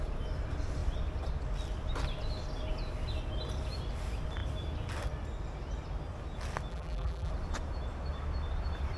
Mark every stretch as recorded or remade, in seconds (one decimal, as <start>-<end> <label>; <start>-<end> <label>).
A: 0.0-6.7 recorded; 6.7-7.3 remade; 7.3-9.0 recorded